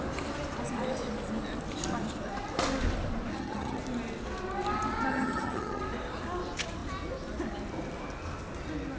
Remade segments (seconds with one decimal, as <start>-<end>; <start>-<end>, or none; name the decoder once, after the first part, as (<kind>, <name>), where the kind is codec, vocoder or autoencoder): 3.3-3.8 (vocoder, HiFi-GAN); 5.1-5.8